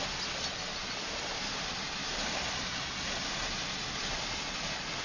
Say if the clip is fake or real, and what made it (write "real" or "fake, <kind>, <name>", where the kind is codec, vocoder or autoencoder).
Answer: real